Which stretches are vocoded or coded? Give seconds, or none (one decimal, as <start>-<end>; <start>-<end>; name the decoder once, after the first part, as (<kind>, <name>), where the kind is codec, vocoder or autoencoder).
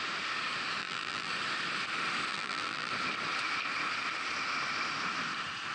0.8-1.3 (vocoder, BigVGAN v2); 2.3-2.9